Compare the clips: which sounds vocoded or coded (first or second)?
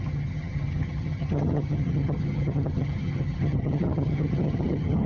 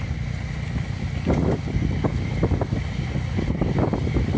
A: first